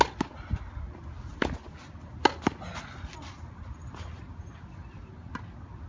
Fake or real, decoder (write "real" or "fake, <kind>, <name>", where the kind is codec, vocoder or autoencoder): real